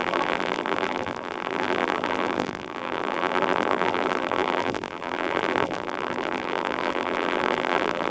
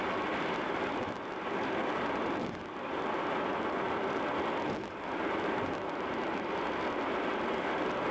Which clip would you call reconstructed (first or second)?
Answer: first